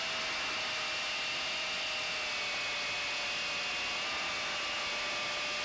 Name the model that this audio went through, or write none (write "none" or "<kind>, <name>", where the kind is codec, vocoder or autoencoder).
none